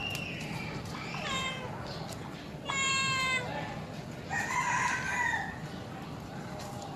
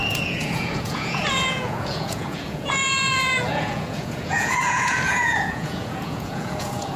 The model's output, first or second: second